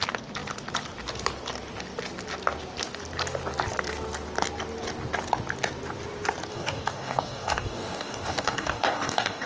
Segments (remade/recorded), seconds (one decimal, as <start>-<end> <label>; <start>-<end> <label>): 0.0-6.5 recorded; 6.5-9.5 remade